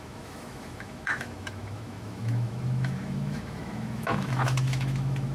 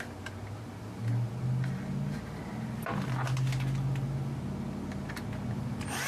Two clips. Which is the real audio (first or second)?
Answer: second